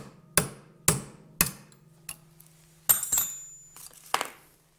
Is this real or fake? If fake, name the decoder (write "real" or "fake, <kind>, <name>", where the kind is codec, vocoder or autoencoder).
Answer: real